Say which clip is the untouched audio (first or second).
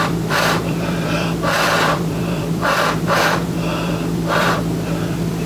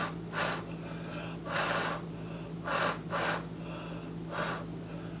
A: second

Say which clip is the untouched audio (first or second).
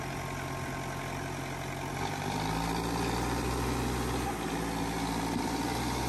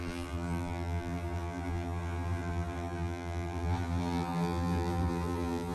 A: first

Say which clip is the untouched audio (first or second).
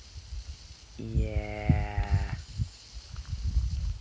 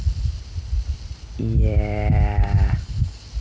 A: first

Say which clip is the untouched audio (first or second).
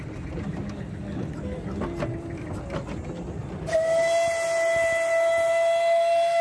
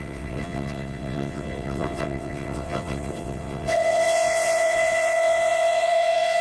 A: first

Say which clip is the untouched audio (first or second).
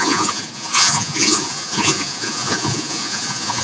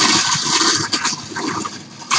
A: second